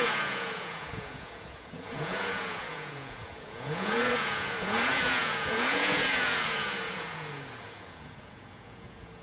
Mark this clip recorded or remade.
remade